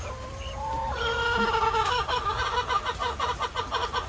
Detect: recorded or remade recorded